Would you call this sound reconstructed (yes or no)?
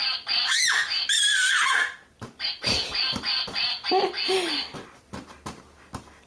no